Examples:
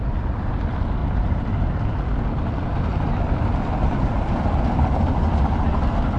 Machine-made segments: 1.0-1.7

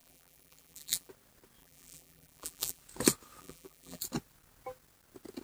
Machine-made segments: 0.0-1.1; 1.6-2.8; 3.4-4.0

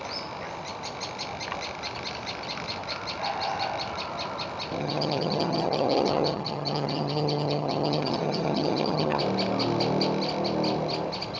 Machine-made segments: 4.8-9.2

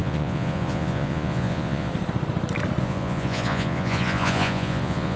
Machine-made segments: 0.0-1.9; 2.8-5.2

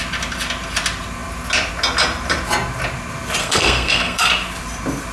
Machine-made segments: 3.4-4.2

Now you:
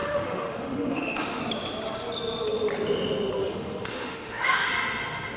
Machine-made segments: 0.0-1.4; 3.4-4.7